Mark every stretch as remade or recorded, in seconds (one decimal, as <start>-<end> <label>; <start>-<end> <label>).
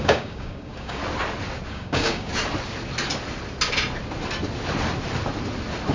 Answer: 0.0-1.0 remade; 1.0-1.7 recorded; 1.7-2.3 remade; 2.3-5.9 recorded